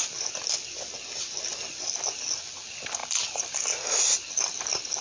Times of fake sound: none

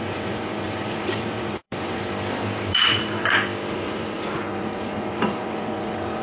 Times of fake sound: 0.0-2.0 (vocoder, Vocos); 2.7-3.2; 3.7-6.2

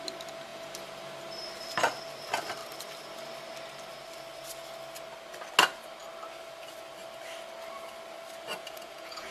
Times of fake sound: 8.6-9.3 (vocoder, Vocos)

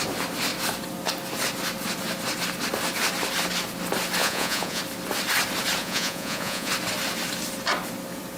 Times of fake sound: 4.2-4.8 (vocoder, Vocos); 5.8-6.7

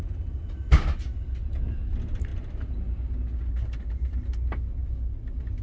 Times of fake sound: none

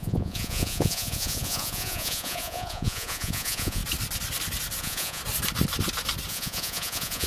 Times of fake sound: 0.0-3.8 (vocoder, Vocos); 4.8-5.2; 6.3-7.3

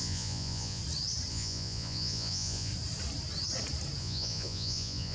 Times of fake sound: 0.0-0.8 (vocoder, Vocos); 1.3-2.7; 4.0-5.1